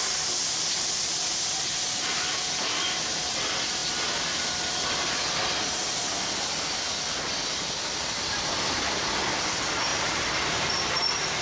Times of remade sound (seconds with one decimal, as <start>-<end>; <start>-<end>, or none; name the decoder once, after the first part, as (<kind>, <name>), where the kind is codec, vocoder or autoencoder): 9.9-10.8 (vocoder, BigVGAN v2)